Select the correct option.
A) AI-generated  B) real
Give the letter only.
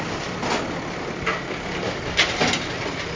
B